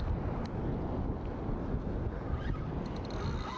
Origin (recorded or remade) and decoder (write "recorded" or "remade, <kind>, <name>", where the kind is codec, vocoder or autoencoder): recorded